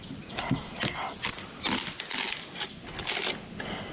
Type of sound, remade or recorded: recorded